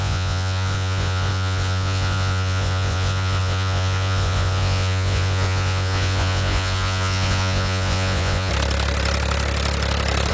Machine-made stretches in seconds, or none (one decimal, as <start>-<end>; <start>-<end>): 0.0-8.5